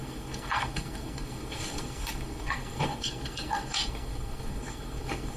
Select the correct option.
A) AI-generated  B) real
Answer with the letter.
A